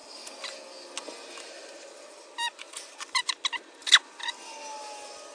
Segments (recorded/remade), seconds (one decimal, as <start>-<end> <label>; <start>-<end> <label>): 0.0-5.3 recorded